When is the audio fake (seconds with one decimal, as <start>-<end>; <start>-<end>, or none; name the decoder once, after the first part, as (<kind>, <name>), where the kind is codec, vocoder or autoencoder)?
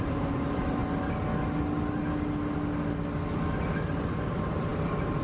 0.0-0.8 (vocoder, BigVGAN v2); 3.9-5.2